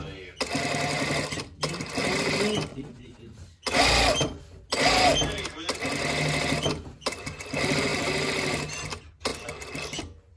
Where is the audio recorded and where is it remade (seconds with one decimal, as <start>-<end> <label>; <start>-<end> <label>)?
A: 0.0-2.7 recorded; 2.7-3.2 remade; 3.2-10.4 recorded